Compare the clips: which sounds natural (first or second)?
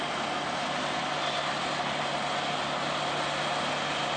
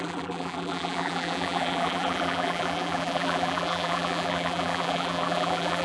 first